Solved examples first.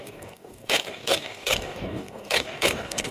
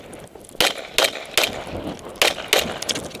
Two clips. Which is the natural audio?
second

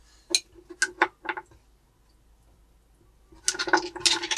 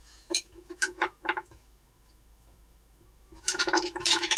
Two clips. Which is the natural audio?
first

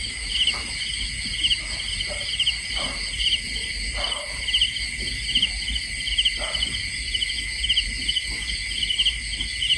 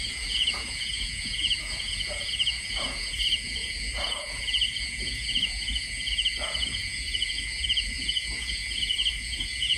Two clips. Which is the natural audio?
first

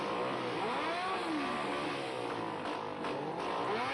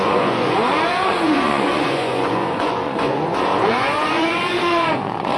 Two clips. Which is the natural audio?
first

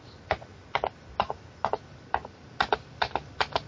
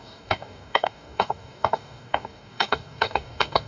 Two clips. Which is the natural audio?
first